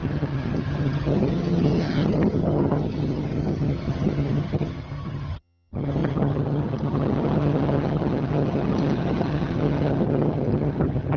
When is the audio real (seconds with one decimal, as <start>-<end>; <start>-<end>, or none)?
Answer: none